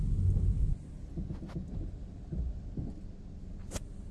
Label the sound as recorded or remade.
recorded